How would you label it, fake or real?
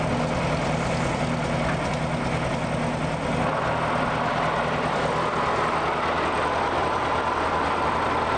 real